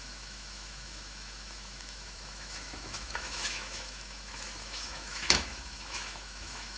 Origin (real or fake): fake